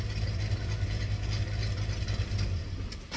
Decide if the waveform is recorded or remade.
recorded